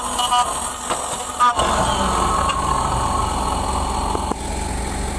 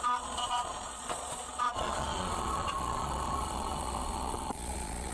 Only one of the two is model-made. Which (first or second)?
second